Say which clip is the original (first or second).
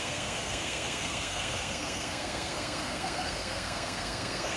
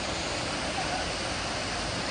second